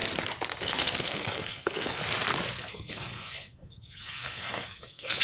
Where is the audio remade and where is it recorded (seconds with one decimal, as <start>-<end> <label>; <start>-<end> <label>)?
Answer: 0.0-0.6 recorded; 0.6-2.0 remade; 2.0-2.6 recorded; 2.6-5.2 remade